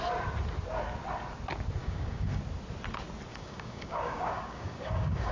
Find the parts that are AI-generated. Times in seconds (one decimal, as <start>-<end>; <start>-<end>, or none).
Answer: 1.8-2.4; 3.3-5.3